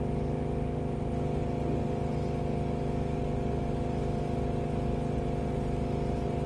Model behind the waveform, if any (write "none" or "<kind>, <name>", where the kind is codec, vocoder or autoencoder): none